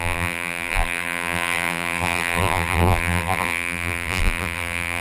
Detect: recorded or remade remade